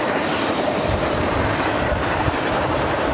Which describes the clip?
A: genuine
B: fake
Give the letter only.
B